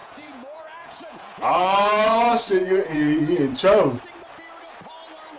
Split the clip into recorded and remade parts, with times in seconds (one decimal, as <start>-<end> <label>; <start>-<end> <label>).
0.0-3.2 remade; 3.2-5.4 recorded